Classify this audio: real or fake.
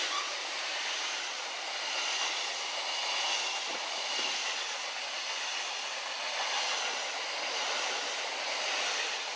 real